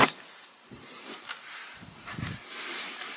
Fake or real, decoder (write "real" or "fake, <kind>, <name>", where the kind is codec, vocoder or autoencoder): fake, vocoder, BigVGAN v2